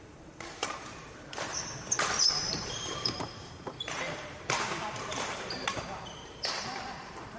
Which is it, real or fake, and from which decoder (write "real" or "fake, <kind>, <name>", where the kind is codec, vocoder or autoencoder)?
fake, vocoder, BigVGAN v2